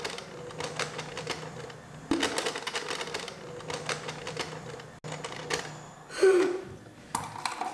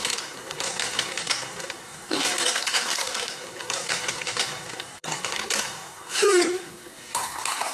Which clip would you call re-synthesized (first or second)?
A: second